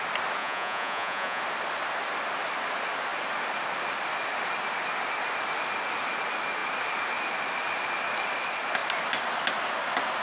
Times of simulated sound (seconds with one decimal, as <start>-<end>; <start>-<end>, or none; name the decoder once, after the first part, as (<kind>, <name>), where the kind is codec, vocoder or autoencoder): 0.4-1.4 (vocoder, Vocos)